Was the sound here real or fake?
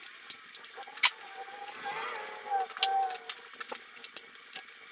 fake